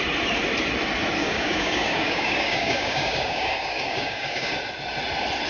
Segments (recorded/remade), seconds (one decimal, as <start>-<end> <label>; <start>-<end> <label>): 0.0-1.2 recorded; 1.2-4.5 remade; 4.5-5.5 recorded